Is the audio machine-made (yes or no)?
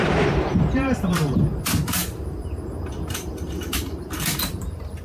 yes